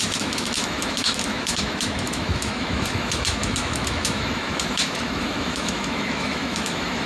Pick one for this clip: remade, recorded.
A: remade